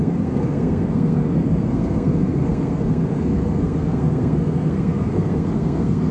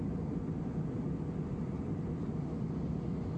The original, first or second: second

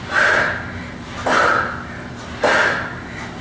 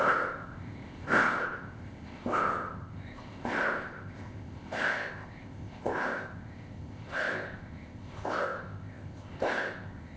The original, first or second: first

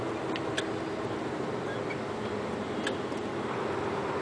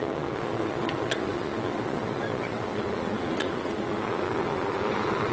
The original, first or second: first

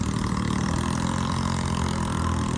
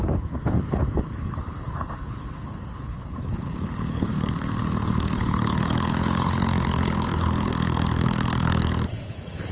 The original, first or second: first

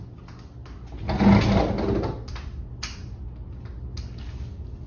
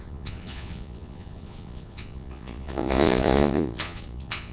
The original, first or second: first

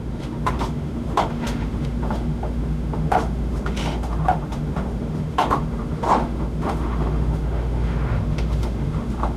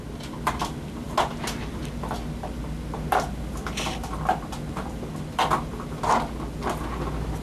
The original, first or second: second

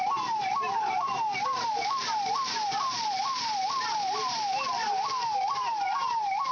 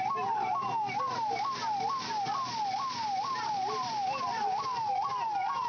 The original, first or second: second